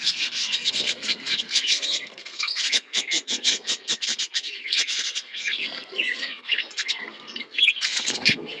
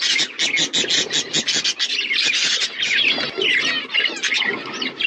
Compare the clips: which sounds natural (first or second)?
second